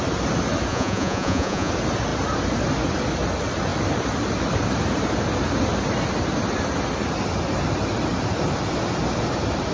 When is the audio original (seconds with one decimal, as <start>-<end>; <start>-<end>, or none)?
0.0-0.7; 1.7-9.7